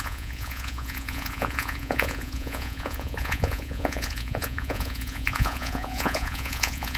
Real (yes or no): no